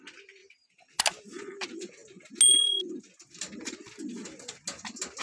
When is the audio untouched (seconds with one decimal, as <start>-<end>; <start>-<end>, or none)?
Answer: 0.0-5.2

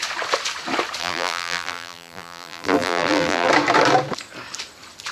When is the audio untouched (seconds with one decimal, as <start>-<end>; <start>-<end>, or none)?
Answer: 0.0-1.0; 3.5-5.1